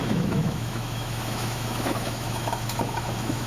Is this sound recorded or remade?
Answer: remade